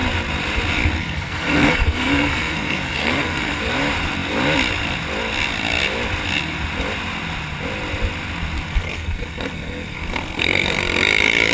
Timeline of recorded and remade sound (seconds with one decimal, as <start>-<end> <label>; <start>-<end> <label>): 0.0-1.0 recorded; 1.0-3.6 remade; 3.6-8.7 recorded; 8.7-10.8 remade; 10.8-11.5 recorded